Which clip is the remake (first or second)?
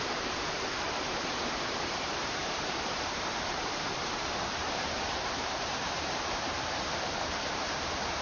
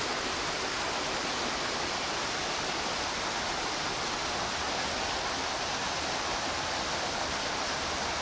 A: first